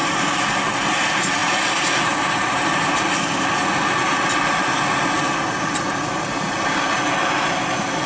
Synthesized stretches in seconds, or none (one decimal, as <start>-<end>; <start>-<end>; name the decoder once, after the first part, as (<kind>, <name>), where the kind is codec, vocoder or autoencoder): none

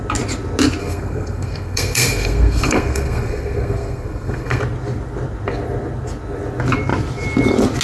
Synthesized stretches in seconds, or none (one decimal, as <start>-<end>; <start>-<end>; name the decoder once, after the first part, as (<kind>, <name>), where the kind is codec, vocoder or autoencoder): 0.8-4.6 (codec, SNAC)

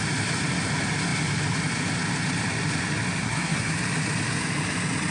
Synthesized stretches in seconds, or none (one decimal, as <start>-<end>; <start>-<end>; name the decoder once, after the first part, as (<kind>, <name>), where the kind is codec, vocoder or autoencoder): 3.2-3.7 (codec, SNAC)

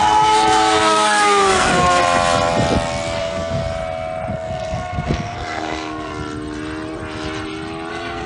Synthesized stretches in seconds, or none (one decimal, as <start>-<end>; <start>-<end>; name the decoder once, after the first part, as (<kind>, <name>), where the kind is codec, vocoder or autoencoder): 0.0-2.0 (codec, SNAC); 3.2-3.6; 4.3-6.1; 7.9-8.3

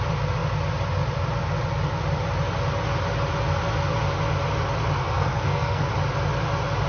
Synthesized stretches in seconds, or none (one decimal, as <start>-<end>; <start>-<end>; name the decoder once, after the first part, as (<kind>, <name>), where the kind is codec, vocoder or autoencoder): 5.0-5.9 (codec, SNAC)

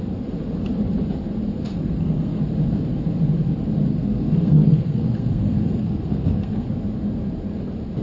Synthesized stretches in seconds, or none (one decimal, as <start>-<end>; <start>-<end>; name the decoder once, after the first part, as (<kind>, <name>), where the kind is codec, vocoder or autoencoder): 1.7-2.4 (codec, SNAC); 3.9-6.7

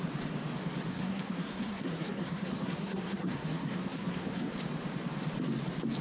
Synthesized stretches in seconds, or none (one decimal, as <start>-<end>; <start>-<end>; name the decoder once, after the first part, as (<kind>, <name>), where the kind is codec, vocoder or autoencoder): 0.9-4.5 (codec, SNAC)

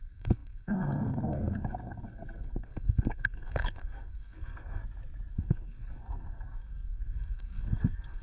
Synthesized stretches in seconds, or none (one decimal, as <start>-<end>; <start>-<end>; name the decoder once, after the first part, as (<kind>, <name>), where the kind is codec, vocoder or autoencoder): 0.0-4.8 (codec, SNAC); 5.3-8.2